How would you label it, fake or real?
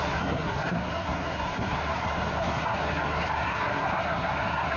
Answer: fake